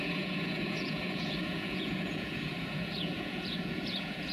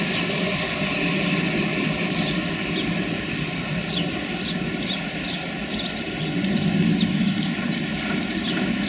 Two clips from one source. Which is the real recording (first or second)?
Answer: second